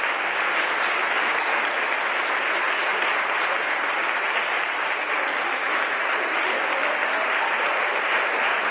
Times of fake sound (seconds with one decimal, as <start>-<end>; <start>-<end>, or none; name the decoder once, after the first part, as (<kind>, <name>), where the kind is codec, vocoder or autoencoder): none